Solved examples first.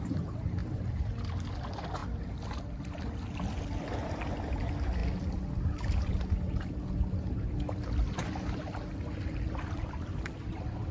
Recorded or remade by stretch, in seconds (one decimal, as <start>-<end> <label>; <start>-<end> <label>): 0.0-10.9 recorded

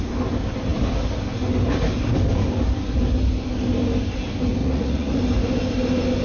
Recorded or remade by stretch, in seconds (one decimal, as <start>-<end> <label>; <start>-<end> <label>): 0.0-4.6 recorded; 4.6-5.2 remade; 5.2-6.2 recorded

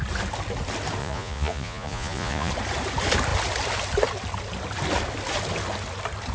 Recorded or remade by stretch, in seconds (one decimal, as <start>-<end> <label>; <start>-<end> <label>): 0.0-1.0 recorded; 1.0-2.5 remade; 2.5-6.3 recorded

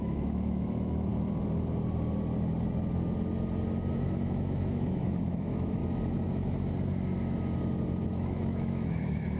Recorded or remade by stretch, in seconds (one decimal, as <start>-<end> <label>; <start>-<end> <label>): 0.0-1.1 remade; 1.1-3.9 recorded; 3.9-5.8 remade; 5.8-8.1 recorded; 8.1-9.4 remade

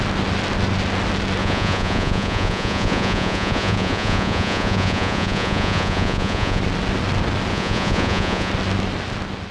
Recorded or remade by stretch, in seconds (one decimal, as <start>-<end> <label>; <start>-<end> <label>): 0.0-1.4 recorded; 1.4-6.6 remade; 6.6-7.5 recorded; 7.5-8.5 remade; 8.5-9.5 recorded